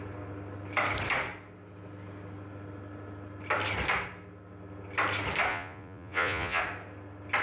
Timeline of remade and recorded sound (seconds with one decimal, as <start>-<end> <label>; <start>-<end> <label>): 0.0-5.5 recorded; 5.5-6.6 remade; 6.6-7.4 recorded